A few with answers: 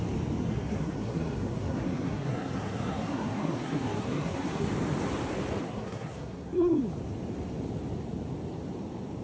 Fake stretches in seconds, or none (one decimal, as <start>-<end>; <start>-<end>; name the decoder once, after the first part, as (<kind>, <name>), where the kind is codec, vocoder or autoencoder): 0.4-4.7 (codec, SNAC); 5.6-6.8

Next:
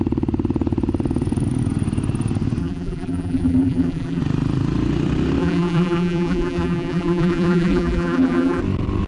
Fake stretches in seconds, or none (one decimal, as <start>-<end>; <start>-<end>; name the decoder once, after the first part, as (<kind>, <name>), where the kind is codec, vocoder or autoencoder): 2.6-4.2 (vocoder, BigVGAN v2); 5.4-8.6

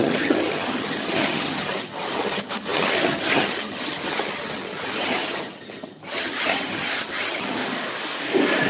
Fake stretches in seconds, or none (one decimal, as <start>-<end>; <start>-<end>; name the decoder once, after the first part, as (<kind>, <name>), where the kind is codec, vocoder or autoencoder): 0.0-7.6 (vocoder, HiFi-GAN)

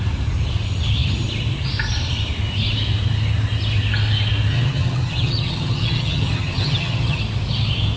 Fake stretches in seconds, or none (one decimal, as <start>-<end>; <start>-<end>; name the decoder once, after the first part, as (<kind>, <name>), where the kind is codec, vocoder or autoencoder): 4.5-7.2 (vocoder, HiFi-GAN)

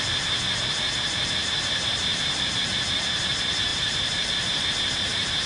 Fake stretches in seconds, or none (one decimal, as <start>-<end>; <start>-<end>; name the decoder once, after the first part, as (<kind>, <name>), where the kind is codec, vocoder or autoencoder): 2.1-2.6 (vocoder, BigVGAN v2); 3.7-4.6

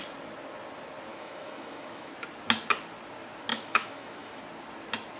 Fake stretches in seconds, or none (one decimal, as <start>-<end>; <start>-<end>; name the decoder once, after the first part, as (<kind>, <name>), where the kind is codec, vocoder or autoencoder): 1.1-2.1 (autoencoder, DAC-VAE); 3.5-4.4

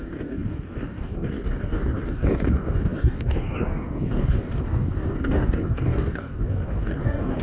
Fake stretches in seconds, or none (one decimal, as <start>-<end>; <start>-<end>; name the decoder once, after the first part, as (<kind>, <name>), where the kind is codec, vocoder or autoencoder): 0.0-7.4 (codec, DAC)

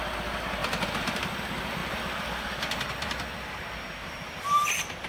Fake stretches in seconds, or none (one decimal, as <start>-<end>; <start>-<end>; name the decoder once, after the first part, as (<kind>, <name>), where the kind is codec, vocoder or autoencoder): 4.0-4.6 (vocoder, BigVGAN v2)